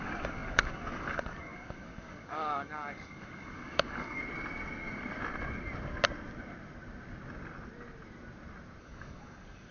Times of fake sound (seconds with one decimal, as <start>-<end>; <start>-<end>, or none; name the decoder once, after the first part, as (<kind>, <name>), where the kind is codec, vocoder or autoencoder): 0.0-4.2 (codec, DAC); 8.8-9.7